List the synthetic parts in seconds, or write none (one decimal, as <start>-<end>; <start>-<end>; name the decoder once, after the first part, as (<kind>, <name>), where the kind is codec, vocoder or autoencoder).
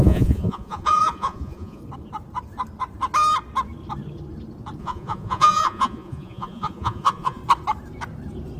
0.0-1.8 (vocoder, Vocos); 4.8-7.4